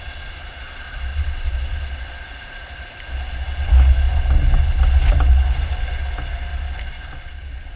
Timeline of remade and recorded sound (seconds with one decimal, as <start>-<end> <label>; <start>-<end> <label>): 0.0-1.1 recorded; 1.1-3.1 remade; 3.1-7.8 recorded